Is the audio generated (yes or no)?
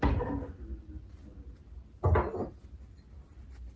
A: no